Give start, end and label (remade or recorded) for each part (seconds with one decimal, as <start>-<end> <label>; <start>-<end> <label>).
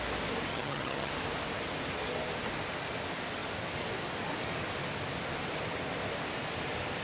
0.0-0.5 recorded; 0.5-1.1 remade; 1.1-7.0 recorded